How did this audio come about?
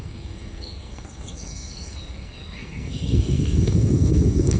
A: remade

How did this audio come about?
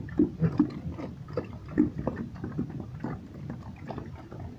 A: recorded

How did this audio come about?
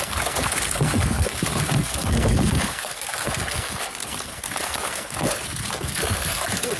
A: remade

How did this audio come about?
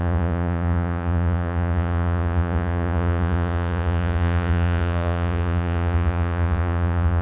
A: remade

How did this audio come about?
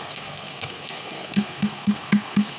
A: remade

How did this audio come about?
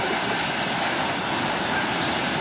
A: recorded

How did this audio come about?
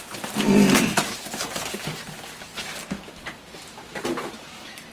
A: recorded